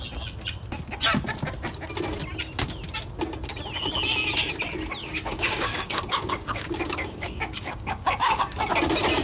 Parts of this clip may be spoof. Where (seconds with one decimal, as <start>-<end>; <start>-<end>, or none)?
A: 5.0-8.7